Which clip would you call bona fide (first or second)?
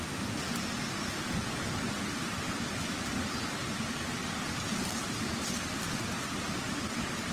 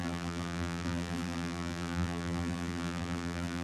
first